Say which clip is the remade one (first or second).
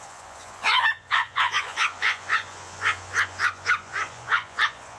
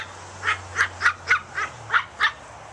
first